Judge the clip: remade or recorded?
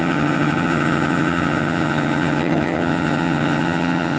remade